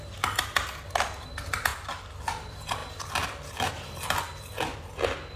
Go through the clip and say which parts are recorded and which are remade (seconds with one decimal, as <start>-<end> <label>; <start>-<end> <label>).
0.0-5.4 recorded